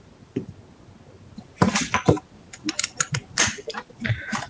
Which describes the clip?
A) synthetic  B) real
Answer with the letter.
B